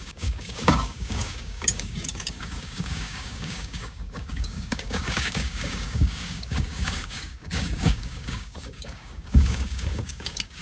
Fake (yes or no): yes